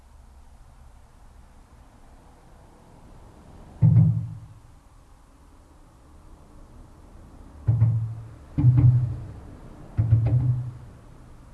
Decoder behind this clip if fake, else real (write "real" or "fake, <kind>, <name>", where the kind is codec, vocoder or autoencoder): real